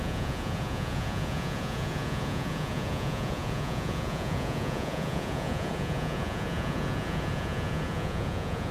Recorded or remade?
remade